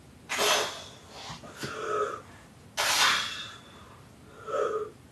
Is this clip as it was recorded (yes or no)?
yes